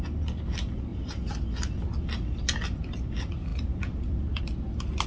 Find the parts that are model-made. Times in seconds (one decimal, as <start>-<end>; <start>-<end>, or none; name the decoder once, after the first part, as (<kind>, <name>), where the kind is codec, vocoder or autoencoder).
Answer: none